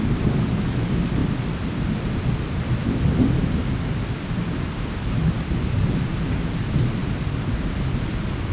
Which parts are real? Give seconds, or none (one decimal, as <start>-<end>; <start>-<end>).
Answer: 0.0-1.2; 5.4-8.5

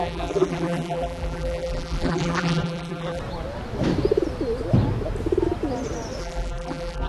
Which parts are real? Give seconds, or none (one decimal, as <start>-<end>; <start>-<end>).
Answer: 3.2-6.2

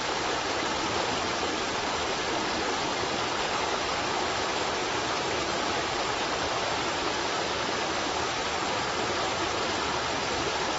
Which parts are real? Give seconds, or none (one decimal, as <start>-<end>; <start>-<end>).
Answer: 0.0-2.9; 3.9-10.8

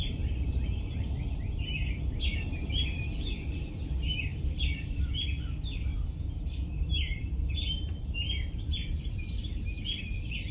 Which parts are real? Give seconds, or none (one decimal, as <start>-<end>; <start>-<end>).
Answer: 0.0-1.8; 3.7-4.3; 5.0-5.9; 10.0-10.5

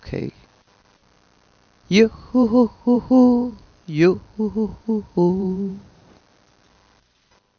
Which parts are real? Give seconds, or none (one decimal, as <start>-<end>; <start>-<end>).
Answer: 0.0-2.1; 3.0-4.7; 6.2-7.6